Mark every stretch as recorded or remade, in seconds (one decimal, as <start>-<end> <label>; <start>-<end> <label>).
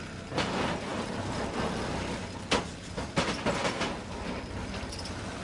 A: 0.0-5.4 recorded